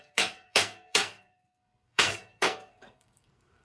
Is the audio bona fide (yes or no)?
no